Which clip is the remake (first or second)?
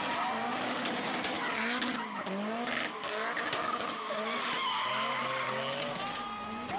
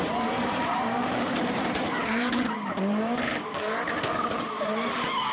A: second